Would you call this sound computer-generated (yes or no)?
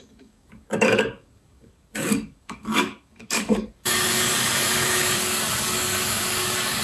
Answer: yes